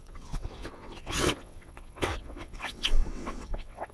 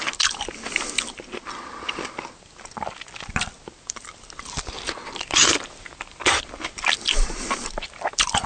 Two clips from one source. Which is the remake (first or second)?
first